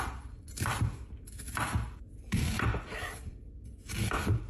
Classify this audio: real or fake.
fake